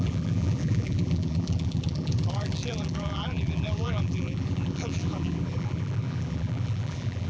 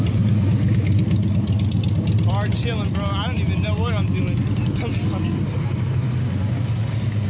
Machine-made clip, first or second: first